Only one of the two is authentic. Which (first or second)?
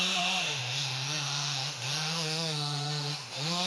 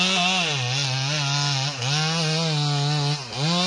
second